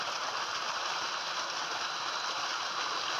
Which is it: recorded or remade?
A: recorded